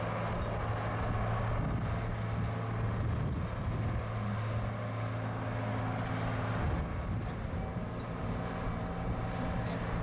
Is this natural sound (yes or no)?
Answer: yes